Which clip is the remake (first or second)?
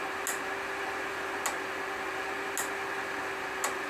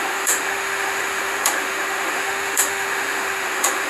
second